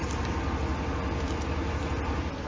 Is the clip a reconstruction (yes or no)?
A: no